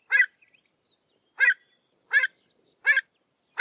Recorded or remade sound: remade